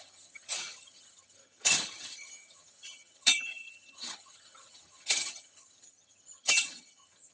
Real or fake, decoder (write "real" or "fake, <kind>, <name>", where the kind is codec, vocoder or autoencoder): fake, vocoder, HiFi-GAN